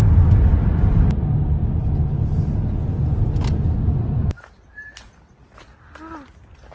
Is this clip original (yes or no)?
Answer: yes